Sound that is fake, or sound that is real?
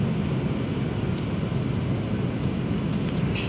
real